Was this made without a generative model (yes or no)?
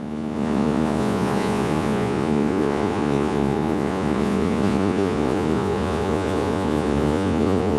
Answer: no